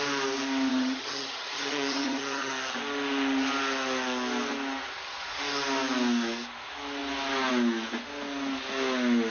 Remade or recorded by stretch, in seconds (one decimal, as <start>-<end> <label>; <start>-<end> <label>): 0.0-0.7 recorded; 0.7-2.5 remade; 2.5-9.3 recorded